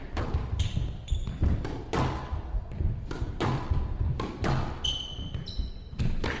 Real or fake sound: real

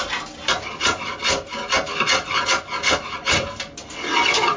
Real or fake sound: real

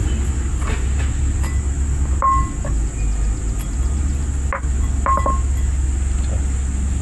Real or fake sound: real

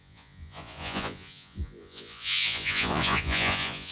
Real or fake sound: fake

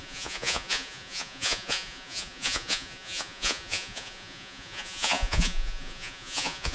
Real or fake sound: fake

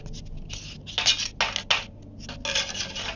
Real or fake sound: real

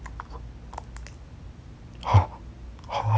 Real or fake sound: real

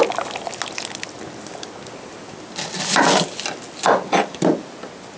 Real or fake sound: real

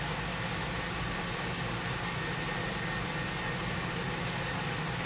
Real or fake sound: real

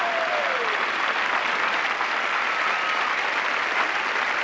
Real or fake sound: real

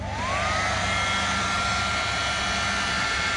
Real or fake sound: real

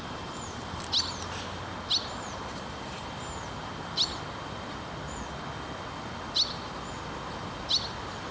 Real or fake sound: real